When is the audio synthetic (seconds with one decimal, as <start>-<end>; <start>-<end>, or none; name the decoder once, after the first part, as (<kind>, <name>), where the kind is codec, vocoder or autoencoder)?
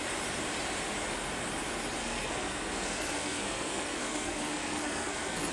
2.0-5.5 (codec, SNAC)